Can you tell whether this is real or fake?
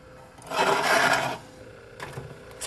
real